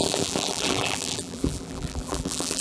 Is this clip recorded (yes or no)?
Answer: no